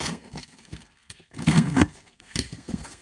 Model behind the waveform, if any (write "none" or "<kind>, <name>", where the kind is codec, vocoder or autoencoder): codec, SNAC